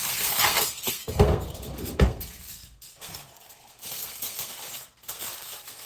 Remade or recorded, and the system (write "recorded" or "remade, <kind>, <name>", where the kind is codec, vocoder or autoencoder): remade, codec, SNAC